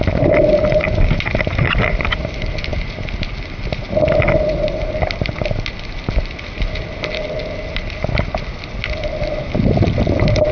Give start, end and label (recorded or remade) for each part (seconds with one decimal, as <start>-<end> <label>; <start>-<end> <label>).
0.0-10.5 recorded